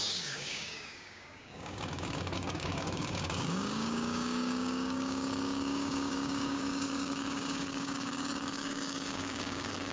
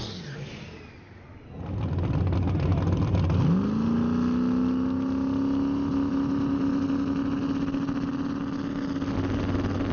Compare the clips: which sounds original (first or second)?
second